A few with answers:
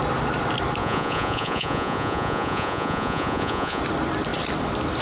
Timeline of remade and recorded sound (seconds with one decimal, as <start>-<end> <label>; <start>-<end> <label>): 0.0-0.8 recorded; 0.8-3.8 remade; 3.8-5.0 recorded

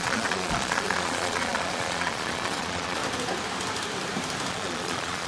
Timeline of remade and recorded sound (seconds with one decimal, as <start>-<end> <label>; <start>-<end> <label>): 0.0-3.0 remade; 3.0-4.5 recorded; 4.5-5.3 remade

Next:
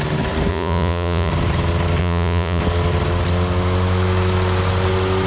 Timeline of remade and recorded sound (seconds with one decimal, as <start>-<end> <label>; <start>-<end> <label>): 0.0-0.5 recorded; 0.5-1.3 remade; 1.3-2.0 recorded; 2.0-2.6 remade; 2.6-5.3 recorded

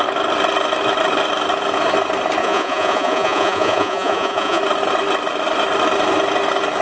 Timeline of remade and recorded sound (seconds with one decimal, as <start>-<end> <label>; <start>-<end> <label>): 0.0-2.4 recorded; 2.4-4.6 remade; 4.6-6.8 recorded

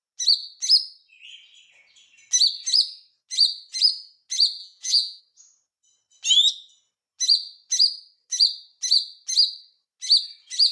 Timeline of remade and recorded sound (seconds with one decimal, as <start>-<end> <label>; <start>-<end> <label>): 0.0-4.6 recorded; 4.6-5.2 remade; 5.2-10.7 recorded

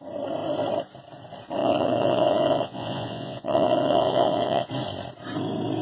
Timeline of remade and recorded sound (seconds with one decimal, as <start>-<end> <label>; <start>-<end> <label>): 0.0-1.6 recorded; 1.6-4.7 remade; 4.7-5.8 recorded

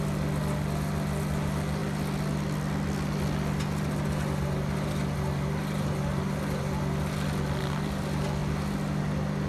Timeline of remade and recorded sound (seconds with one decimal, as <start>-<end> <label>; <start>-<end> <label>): 0.0-9.5 recorded

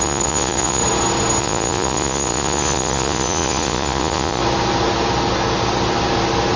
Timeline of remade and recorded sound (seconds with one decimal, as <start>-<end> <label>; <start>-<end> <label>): 0.0-0.8 remade; 0.8-1.4 recorded; 1.4-4.4 remade; 4.4-6.6 recorded